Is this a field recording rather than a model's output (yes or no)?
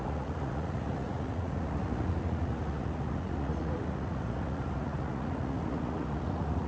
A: no